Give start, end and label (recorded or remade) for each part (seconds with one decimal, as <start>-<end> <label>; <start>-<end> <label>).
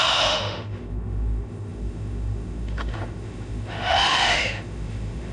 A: 0.0-5.3 remade